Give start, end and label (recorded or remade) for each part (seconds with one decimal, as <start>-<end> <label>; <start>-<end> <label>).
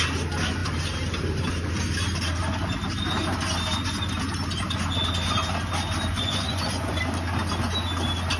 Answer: 0.0-6.1 recorded; 6.1-7.0 remade; 7.0-8.4 recorded